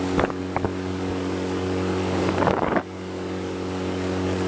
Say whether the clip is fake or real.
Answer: fake